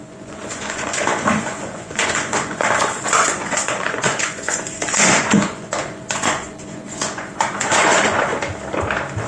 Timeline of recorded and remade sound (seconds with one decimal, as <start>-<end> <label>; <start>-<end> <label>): 0.0-8.3 remade; 8.3-9.3 recorded